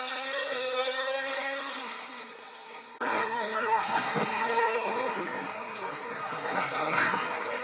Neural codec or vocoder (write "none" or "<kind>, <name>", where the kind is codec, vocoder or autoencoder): codec, SNAC